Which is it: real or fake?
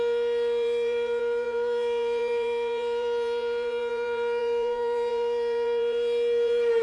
fake